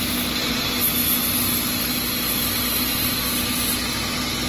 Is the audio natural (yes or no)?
yes